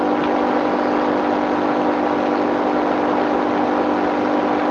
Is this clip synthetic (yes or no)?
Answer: no